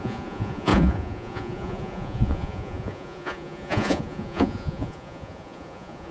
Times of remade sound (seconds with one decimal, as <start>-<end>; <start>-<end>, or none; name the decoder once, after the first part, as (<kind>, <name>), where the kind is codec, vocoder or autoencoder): 0.0-6.1 (vocoder, Vocos)